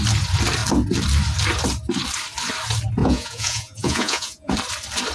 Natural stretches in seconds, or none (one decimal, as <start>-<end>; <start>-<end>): 0.0-3.0; 4.5-5.1